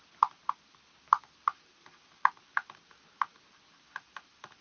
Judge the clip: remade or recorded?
recorded